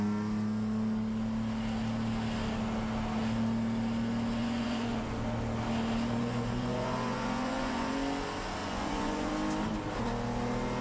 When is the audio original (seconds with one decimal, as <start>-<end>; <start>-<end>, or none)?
0.0-4.4; 5.1-6.2; 7.9-8.6; 9.3-10.8